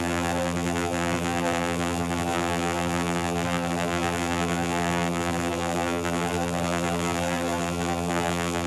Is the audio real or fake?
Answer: fake